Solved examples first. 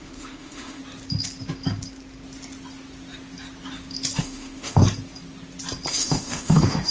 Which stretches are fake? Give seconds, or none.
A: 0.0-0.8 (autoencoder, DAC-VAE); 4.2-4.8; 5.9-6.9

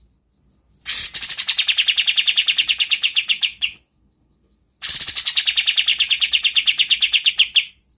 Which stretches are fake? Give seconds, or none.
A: 2.4-4.6 (autoencoder, DAC-VAE); 5.9-7.3

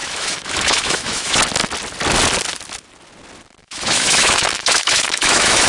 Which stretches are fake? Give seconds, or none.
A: 0.0-1.4 (autoencoder, DAC-VAE); 3.6-5.7

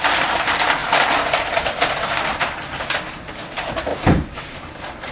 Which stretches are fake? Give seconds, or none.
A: 3.9-4.4 (vocoder, BigVGAN v2)

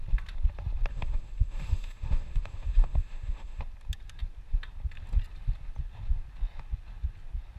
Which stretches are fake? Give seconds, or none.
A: 0.9-3.6 (autoencoder, DAC-VAE)

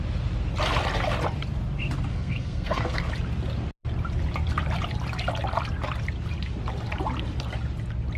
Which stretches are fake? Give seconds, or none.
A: 2.1-3.1 (codec, SNAC)